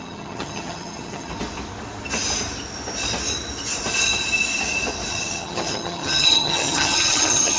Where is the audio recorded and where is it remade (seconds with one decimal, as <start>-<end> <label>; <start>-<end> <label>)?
0.0-1.3 remade; 1.3-5.1 recorded; 5.1-7.6 remade